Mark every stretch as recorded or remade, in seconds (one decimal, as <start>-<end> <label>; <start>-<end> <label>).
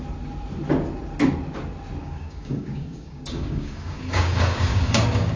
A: 0.0-2.0 recorded; 2.0-5.4 remade